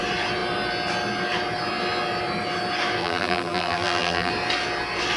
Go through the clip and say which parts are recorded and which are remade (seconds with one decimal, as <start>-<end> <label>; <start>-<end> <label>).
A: 0.0-3.0 recorded; 3.0-4.3 remade; 4.3-5.2 recorded